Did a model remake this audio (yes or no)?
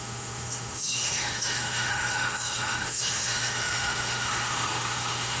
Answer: yes